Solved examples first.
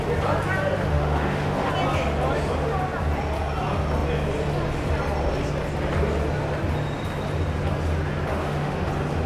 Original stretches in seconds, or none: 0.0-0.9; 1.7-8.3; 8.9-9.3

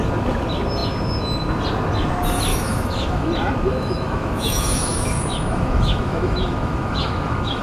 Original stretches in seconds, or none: 0.0-2.5; 3.3-3.7

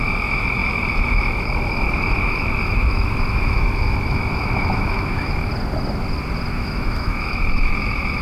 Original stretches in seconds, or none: 5.5-6.5

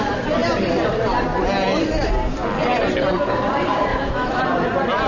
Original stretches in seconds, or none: 0.0-3.9; 4.4-5.1

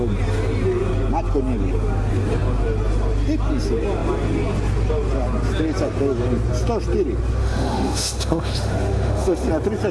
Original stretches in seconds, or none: 0.0-7.4; 9.5-9.9

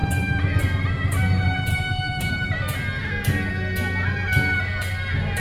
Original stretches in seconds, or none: 0.0-1.7; 2.3-5.4